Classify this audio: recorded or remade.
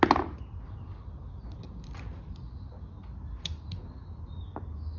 recorded